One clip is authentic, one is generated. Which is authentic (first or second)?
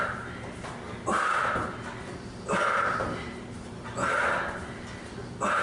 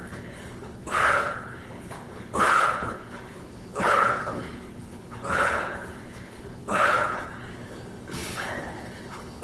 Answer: first